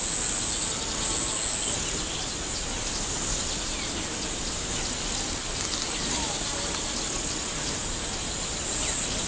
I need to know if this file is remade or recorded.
recorded